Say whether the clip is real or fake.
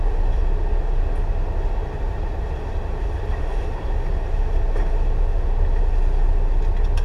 real